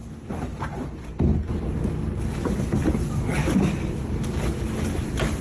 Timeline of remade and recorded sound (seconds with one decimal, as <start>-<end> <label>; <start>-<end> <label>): 0.0-5.4 recorded